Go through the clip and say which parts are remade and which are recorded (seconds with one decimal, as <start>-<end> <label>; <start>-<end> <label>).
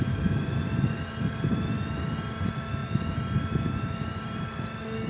0.0-5.1 recorded